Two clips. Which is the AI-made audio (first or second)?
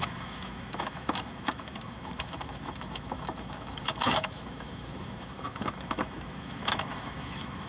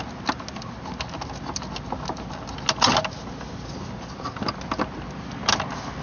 first